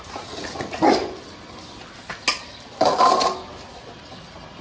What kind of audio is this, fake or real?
real